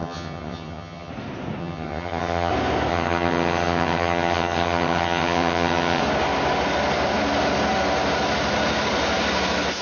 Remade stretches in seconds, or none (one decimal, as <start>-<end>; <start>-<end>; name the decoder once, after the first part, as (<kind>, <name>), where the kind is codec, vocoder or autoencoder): 0.0-1.1 (vocoder, HiFi-GAN); 1.6-2.5; 2.9-6.0